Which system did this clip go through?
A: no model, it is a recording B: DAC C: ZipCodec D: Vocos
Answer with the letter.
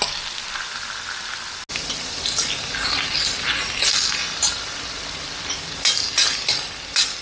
A